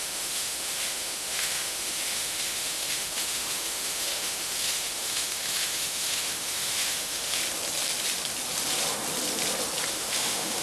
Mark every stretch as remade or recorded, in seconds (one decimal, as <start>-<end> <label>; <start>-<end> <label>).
0.0-7.4 remade; 7.4-9.9 recorded; 9.9-10.6 remade